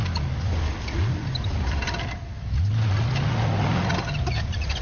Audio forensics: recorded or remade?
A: recorded